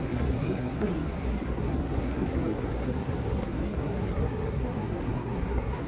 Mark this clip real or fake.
fake